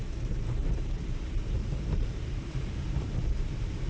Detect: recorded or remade remade